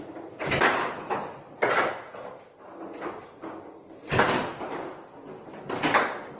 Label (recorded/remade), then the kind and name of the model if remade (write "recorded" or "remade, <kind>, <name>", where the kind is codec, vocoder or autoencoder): recorded